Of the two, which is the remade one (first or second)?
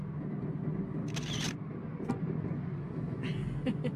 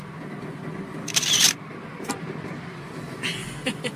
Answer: second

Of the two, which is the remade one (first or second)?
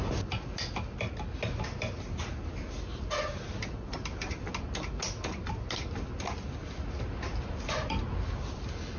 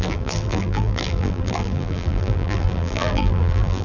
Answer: second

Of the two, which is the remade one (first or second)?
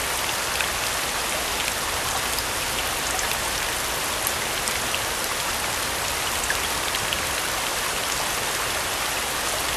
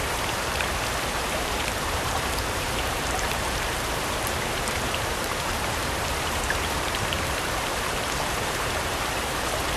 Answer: second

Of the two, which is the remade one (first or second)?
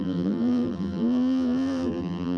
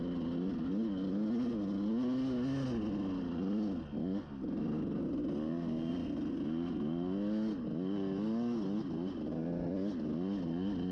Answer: first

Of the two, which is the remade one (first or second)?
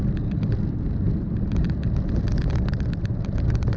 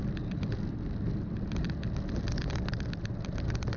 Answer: first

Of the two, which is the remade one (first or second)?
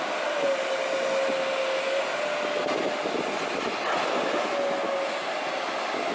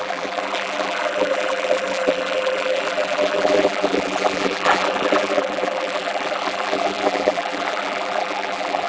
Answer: second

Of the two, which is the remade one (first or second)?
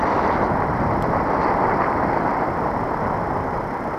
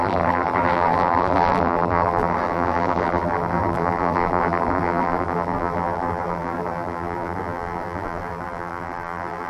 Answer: second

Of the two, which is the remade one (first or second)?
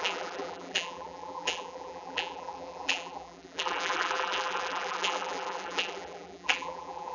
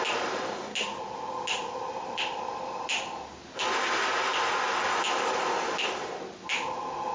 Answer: first